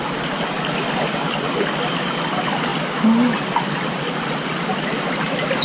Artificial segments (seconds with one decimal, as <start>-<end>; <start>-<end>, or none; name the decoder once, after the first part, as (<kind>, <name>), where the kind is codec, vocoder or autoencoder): none